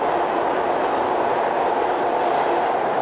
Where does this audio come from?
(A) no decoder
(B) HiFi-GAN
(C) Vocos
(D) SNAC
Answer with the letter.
A